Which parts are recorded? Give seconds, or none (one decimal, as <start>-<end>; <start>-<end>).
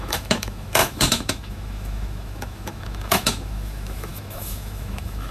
none